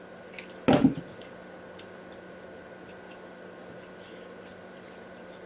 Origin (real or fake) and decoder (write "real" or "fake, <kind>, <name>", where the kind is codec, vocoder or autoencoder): real